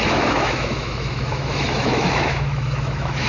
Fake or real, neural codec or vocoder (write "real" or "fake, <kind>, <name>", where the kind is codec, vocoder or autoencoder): fake, autoencoder, DAC-VAE